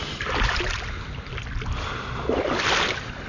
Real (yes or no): yes